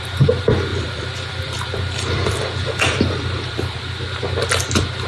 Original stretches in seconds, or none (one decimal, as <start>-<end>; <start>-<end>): 0.0-0.7; 3.8-5.1